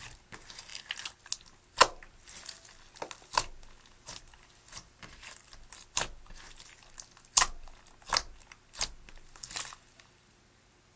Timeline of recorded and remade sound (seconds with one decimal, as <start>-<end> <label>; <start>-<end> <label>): 0.0-11.0 recorded